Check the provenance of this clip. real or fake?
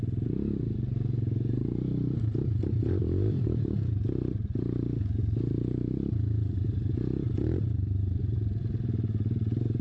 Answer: fake